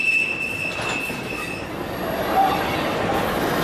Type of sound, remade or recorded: recorded